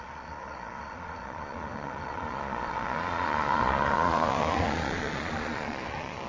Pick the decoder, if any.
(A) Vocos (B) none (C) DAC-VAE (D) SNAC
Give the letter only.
A